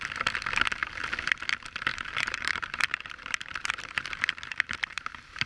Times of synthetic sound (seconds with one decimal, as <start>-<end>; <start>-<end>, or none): 1.9-5.5